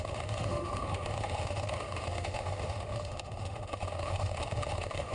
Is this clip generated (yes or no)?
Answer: yes